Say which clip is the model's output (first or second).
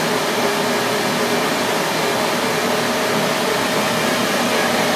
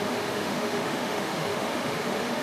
second